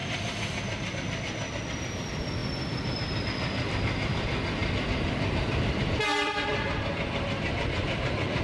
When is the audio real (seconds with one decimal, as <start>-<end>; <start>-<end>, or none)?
0.0-0.9; 2.4-3.2